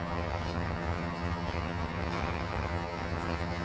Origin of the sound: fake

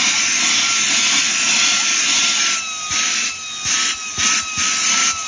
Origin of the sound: real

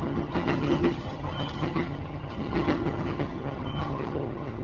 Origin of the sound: fake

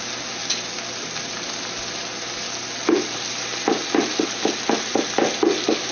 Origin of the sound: real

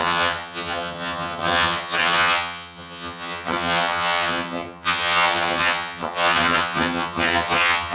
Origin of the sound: fake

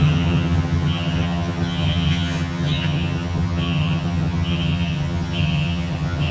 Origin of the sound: fake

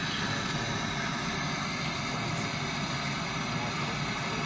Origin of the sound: real